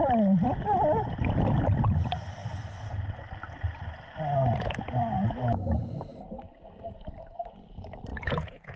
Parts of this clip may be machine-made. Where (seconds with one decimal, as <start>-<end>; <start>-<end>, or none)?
8.1-8.8